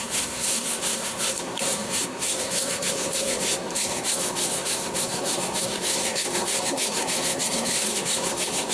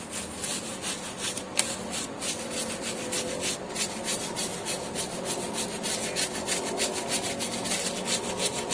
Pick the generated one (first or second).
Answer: first